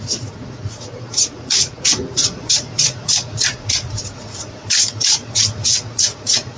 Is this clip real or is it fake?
fake